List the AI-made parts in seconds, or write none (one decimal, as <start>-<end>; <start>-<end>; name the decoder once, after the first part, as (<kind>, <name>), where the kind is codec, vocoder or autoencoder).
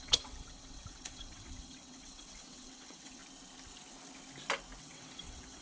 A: 0.0-3.2 (vocoder, WaveNeXt); 4.8-5.6